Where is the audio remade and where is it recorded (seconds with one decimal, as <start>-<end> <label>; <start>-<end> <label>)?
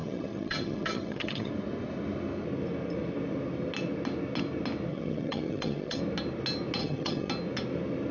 0.0-1.5 remade; 1.5-4.9 recorded; 4.9-6.0 remade; 6.0-6.8 recorded; 6.8-7.3 remade; 7.3-8.1 recorded